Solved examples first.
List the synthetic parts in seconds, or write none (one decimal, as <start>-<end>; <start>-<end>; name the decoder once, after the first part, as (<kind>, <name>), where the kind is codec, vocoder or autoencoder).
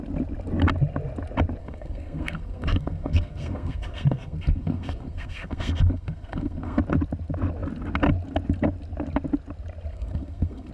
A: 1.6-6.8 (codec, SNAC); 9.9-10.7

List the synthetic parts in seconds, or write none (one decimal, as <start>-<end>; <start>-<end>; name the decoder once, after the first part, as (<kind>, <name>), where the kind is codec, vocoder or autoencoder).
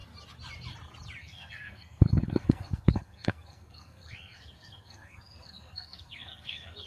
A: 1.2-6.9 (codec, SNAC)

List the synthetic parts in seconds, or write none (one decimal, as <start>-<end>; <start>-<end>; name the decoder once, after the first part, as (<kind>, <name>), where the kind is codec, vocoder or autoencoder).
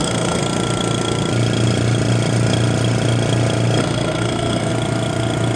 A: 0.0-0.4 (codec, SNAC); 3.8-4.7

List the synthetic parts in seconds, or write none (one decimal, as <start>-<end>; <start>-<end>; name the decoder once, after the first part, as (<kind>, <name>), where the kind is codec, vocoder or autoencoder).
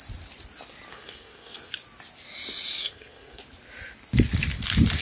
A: 0.9-1.7 (codec, SNAC); 2.8-3.4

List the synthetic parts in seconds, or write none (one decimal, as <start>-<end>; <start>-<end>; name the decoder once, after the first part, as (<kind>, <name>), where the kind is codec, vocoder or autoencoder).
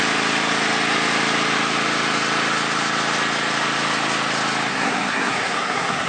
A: 4.7-6.1 (codec, SNAC)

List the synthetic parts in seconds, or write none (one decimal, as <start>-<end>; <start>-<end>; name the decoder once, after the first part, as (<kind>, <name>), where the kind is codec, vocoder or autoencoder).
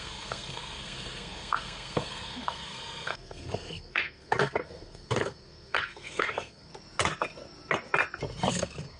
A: 0.0-6.7 (codec, SNAC); 8.5-9.0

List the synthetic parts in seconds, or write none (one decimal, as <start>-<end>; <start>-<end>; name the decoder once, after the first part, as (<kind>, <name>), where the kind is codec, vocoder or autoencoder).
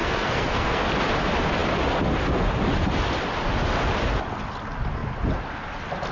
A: 0.0-0.9 (codec, SNAC)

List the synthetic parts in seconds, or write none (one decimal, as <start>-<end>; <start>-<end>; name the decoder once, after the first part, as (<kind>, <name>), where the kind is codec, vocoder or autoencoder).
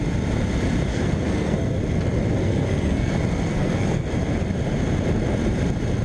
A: 0.9-1.8 (codec, SNAC); 2.4-3.1; 3.5-4.1